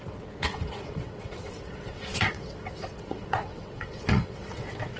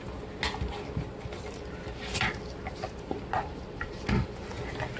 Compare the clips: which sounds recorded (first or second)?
second